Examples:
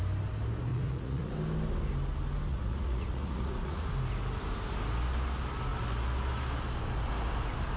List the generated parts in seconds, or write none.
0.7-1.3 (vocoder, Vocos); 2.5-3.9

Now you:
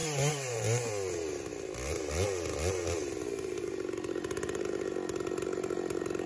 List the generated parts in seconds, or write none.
0.0-0.9 (vocoder, BigVGAN v2)

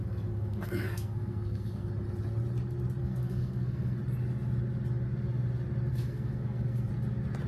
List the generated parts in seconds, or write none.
0.0-1.9 (codec, SNAC); 3.0-4.0; 5.9-6.9

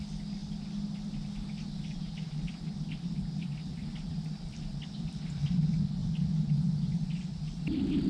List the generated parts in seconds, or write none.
6.0-6.7 (vocoder, BigVGAN v2)

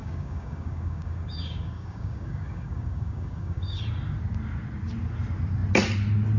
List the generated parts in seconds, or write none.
0.0-3.8 (codec, DAC)

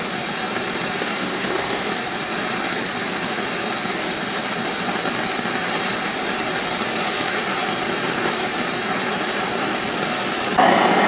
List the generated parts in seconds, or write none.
1.0-1.8 (codec, SNAC)

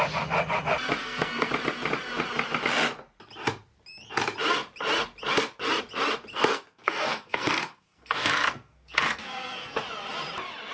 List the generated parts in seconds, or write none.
1.0-1.5 (codec, SNAC); 6.3-9.8

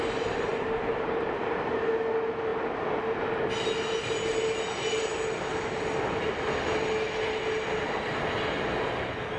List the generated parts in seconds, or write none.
0.5-1.3 (vocoder, BigVGAN v2)